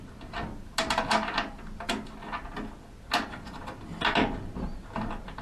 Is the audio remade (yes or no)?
no